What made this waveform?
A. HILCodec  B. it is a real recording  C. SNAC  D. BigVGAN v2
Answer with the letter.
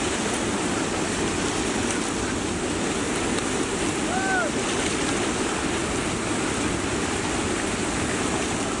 B